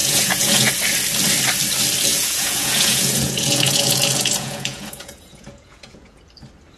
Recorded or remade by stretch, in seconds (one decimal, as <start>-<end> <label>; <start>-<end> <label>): 0.0-0.7 remade; 0.7-2.1 recorded; 2.1-6.2 remade; 6.2-6.8 recorded